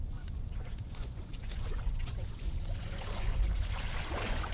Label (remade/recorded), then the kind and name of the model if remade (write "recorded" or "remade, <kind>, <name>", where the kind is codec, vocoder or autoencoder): remade, vocoder, Vocos